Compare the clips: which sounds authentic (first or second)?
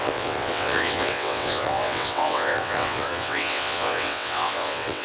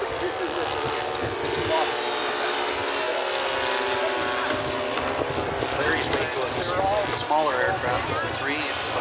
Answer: second